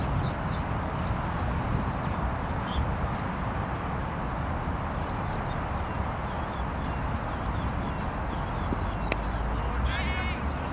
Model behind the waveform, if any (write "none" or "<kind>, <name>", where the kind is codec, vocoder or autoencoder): none